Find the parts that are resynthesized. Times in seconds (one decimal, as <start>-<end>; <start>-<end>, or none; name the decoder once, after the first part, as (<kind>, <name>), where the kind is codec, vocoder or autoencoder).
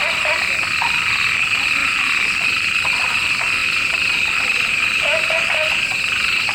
3.6-6.5 (vocoder, BigVGAN v2)